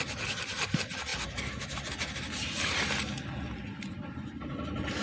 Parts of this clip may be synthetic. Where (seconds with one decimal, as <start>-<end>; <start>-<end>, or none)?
none